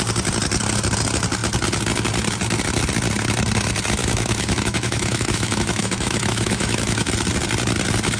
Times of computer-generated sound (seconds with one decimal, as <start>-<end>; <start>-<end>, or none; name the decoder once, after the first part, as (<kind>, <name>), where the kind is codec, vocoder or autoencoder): 4.0-7.1 (autoencoder, DAC-VAE)